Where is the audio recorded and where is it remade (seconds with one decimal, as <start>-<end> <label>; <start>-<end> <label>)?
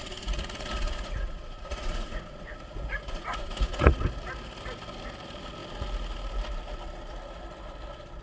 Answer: 0.0-4.0 remade; 4.0-8.2 recorded